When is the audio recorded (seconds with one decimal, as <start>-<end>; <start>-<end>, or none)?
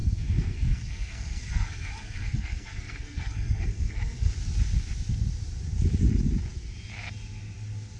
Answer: 4.3-8.0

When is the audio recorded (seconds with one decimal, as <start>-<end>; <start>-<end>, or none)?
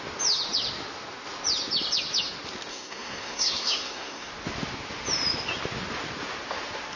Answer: 0.0-2.7; 4.3-7.0